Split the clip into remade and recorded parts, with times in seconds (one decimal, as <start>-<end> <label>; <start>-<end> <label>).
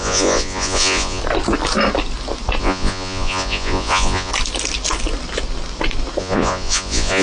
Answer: 0.0-1.2 remade; 1.2-2.6 recorded; 2.6-4.3 remade; 4.3-6.2 recorded; 6.2-7.2 remade